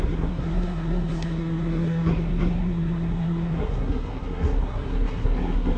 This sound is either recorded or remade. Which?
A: remade